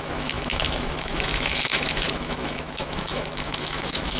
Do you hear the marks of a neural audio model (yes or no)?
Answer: yes